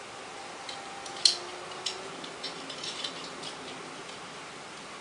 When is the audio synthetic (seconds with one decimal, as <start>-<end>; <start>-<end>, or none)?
none